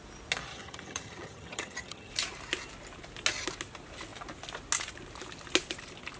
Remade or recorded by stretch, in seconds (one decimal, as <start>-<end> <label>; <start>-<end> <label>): 0.0-0.5 recorded; 0.5-2.1 remade; 2.1-6.2 recorded

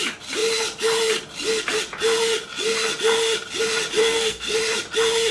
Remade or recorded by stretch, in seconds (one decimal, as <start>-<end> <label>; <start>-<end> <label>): 0.0-4.0 recorded; 4.0-4.5 remade; 4.5-5.3 recorded

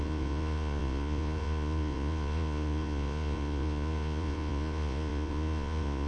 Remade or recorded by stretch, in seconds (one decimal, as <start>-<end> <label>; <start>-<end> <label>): 0.0-6.1 remade